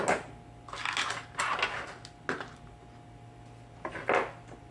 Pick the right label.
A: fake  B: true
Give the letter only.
B